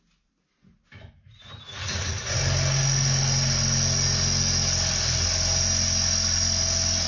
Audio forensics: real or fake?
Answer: real